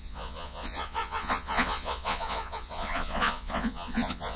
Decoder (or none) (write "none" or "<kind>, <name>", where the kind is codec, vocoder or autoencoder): vocoder, Vocos